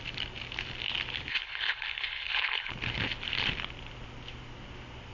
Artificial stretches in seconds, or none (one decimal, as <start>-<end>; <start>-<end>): 1.3-2.7